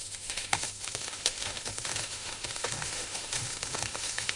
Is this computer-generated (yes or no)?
yes